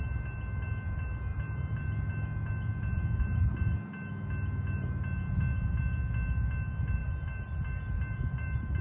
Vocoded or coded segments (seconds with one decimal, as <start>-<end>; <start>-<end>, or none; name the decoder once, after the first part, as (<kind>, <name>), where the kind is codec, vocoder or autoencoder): 1.3-2.1 (vocoder, BigVGAN v2); 7.0-8.8